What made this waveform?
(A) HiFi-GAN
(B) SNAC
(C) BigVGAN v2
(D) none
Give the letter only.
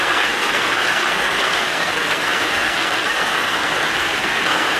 B